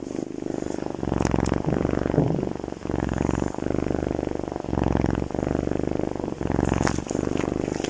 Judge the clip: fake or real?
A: real